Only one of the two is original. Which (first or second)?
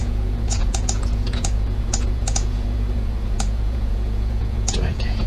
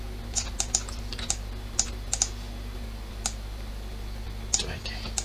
second